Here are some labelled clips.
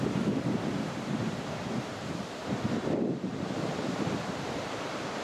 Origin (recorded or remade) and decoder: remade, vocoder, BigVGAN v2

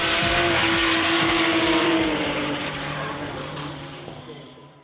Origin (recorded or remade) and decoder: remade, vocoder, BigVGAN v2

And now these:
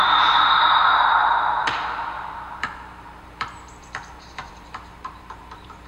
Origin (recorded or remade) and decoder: remade, vocoder, BigVGAN v2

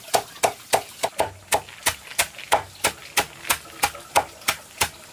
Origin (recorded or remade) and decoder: recorded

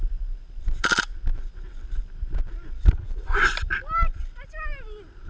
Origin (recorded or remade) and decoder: recorded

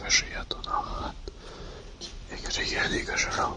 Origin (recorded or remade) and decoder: remade, vocoder, BigVGAN v2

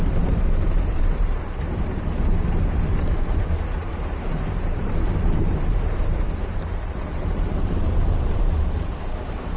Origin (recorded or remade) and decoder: remade, vocoder, BigVGAN v2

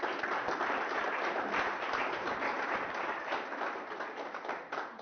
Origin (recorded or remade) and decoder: remade, vocoder, BigVGAN v2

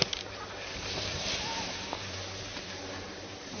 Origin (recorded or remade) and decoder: remade, vocoder, BigVGAN v2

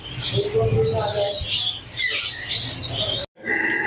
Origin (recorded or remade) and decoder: recorded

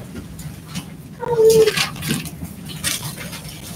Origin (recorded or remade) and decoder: recorded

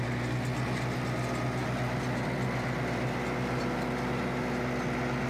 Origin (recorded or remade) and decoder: recorded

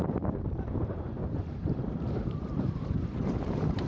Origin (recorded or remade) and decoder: remade, vocoder, BigVGAN v2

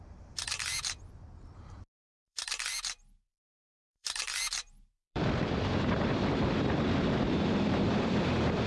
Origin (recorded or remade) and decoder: remade, vocoder, BigVGAN v2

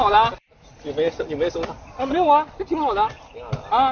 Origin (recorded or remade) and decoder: recorded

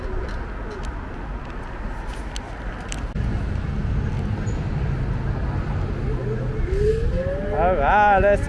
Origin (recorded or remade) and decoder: recorded